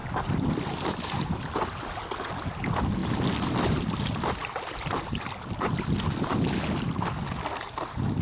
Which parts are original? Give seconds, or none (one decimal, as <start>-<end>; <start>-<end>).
0.0-8.2